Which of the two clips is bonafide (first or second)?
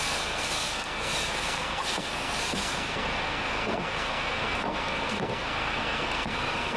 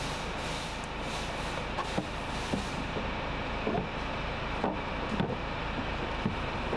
second